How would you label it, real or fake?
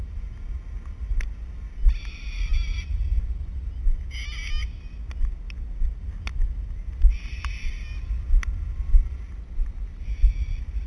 real